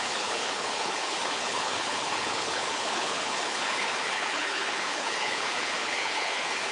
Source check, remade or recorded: remade